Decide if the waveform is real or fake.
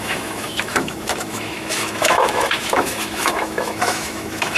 fake